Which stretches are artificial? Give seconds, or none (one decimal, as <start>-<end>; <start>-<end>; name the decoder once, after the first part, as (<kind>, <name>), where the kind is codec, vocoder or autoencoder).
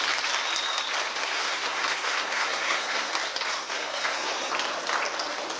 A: 1.2-3.1 (codec, SNAC); 3.5-4.5